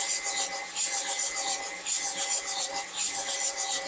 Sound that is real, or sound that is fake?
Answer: real